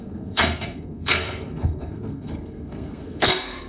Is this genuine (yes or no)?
no